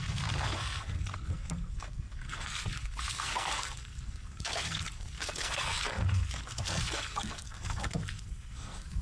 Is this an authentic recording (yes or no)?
no